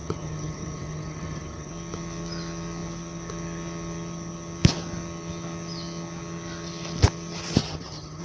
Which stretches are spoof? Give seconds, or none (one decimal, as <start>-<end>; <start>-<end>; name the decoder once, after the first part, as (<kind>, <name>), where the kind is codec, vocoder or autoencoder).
0.0-1.7 (vocoder, HiFi-GAN); 7.6-8.2